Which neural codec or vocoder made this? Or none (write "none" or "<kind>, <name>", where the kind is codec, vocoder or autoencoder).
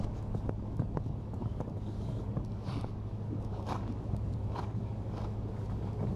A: codec, DAC